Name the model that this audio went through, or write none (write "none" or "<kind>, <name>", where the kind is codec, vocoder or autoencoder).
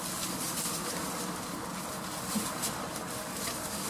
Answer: none